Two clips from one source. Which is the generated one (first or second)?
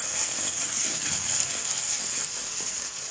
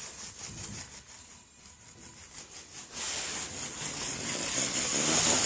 first